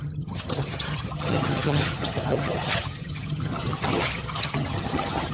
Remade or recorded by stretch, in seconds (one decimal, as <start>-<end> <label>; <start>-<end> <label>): 0.0-5.3 remade